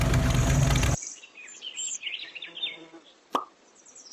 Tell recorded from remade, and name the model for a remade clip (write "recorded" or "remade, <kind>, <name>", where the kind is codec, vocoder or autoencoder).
recorded